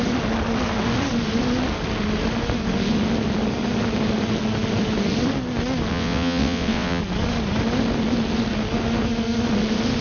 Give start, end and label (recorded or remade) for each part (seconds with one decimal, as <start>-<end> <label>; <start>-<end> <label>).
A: 0.0-5.9 recorded; 5.9-7.0 remade; 7.0-10.0 recorded